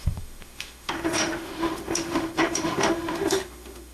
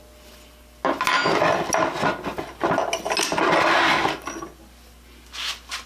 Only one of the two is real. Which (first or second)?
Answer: second